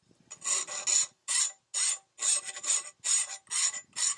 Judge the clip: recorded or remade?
recorded